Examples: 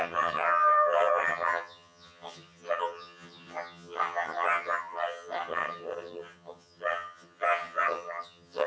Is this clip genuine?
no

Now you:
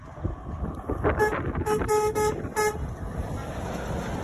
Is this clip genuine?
yes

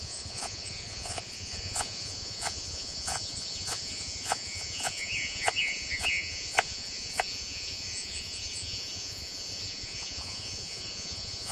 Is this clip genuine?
no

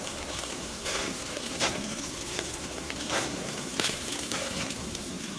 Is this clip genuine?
no